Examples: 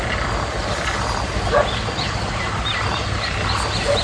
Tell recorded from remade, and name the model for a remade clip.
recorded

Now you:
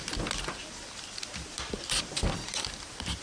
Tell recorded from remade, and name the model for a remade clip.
remade, vocoder, BigVGAN v2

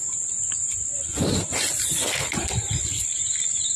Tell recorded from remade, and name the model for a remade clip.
recorded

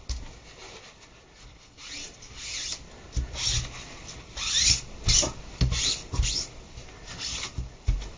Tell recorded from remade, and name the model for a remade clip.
recorded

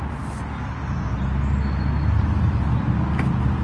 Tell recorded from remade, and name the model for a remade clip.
recorded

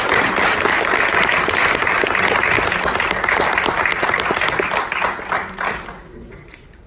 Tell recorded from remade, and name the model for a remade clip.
recorded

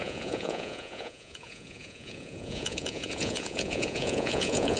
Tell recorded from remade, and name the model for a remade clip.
remade, vocoder, Vocos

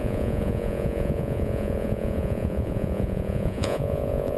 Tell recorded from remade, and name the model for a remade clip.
remade, vocoder, Vocos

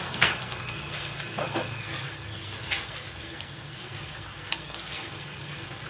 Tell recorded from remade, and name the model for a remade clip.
remade, codec, SNAC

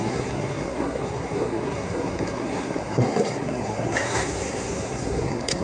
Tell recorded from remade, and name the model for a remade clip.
remade, codec, SNAC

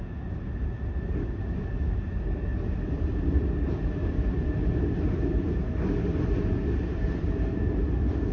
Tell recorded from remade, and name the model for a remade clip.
recorded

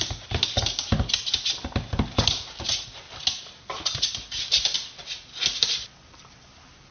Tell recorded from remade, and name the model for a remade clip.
recorded